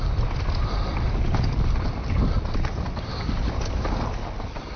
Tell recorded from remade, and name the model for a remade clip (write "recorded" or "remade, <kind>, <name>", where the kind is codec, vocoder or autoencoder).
recorded